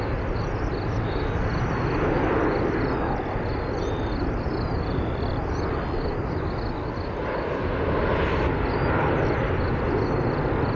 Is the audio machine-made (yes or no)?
no